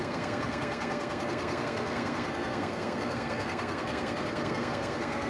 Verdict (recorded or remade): remade